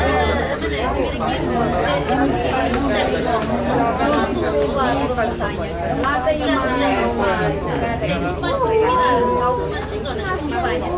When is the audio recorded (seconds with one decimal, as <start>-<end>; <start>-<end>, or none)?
0.0-11.0